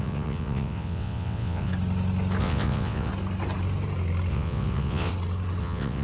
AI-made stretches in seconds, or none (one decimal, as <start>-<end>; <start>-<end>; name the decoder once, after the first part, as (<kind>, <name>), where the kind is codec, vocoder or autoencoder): 0.0-1.7 (vocoder, WaveNeXt); 2.4-3.1; 4.3-5.1; 5.6-6.0

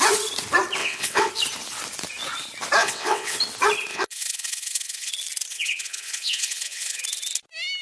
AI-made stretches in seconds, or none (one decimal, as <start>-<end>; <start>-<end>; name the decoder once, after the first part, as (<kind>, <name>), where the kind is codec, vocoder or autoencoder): 0.8-1.3 (vocoder, WaveNeXt); 2.8-3.4; 3.9-5.1; 5.5-7.0

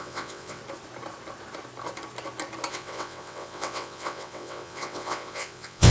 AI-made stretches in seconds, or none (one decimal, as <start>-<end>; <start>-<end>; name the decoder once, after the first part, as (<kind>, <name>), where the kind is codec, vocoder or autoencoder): 0.0-0.6 (vocoder, WaveNeXt); 2.7-5.9

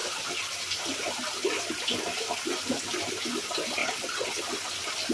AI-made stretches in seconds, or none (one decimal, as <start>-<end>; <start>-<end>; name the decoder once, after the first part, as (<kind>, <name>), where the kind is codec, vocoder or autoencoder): 3.8-4.4 (vocoder, WaveNeXt)

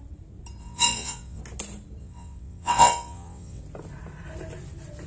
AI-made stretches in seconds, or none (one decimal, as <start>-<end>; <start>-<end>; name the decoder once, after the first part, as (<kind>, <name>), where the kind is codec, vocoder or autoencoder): 0.6-1.4 (vocoder, WaveNeXt); 2.0-3.6